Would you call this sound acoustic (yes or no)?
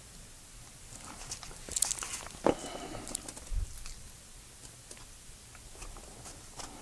yes